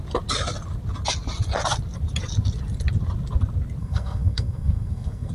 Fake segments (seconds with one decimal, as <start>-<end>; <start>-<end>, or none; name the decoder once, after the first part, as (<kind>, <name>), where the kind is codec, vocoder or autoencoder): 3.8-5.3 (codec, SNAC)